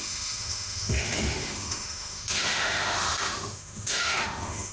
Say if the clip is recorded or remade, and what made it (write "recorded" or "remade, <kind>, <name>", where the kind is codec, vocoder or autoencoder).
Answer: remade, autoencoder, DAC-VAE